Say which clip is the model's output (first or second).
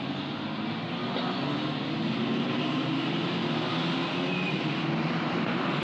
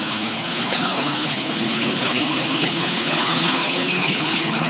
second